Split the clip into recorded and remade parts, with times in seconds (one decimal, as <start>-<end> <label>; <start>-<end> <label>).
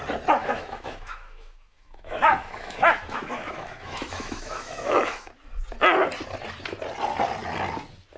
0.0-0.4 recorded; 0.4-5.3 remade; 5.3-8.2 recorded